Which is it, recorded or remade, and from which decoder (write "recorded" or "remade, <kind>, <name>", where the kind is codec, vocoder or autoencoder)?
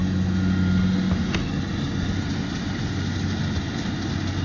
recorded